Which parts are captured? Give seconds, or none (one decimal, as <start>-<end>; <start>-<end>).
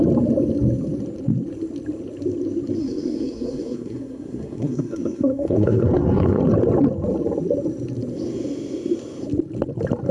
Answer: 0.0-2.8; 6.4-10.1